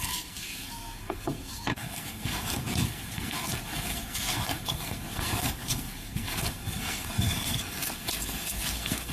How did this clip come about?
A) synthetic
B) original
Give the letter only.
A